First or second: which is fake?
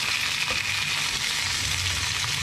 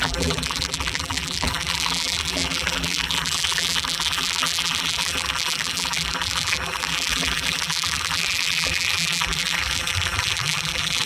second